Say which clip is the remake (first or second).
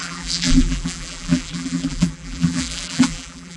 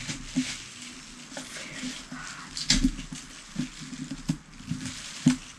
first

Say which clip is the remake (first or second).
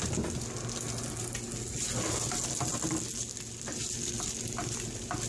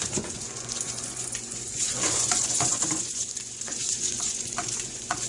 second